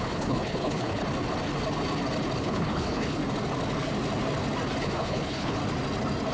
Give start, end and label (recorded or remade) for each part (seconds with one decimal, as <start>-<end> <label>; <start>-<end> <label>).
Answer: 0.0-1.0 remade; 1.0-2.4 recorded; 2.4-3.2 remade; 3.2-4.8 recorded; 4.8-5.6 remade; 5.6-6.3 recorded